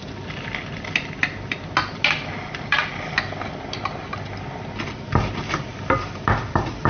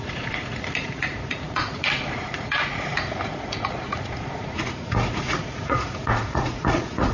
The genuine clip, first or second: first